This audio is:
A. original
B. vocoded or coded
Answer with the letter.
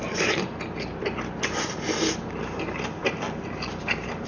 A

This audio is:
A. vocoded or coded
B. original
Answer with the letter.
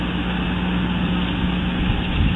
B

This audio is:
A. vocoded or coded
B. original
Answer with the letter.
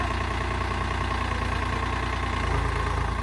B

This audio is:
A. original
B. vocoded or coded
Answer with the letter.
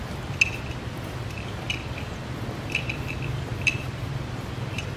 A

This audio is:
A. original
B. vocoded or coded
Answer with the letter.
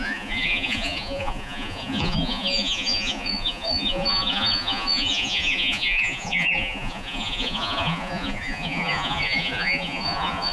B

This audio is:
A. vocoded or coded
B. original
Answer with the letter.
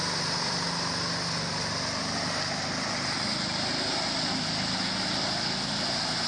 B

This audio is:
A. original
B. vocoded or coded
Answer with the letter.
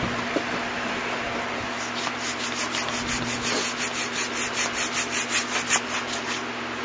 A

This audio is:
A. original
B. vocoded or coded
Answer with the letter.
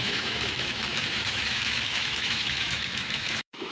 B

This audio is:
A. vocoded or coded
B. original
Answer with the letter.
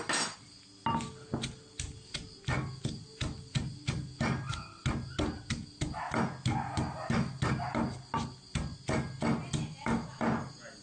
B